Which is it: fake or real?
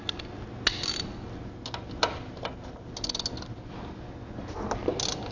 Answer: real